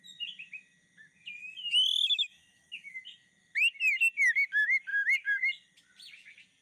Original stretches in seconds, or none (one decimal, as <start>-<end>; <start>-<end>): 0.0-1.4; 3.0-6.6